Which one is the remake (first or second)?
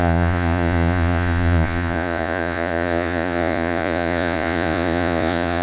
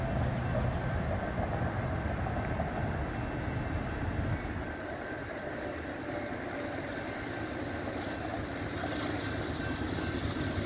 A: first